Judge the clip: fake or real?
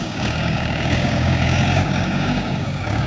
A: fake